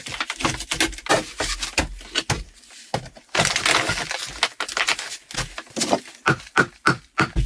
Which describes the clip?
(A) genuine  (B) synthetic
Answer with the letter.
A